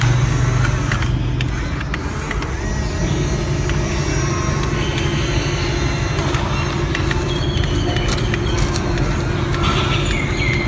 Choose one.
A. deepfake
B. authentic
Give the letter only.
B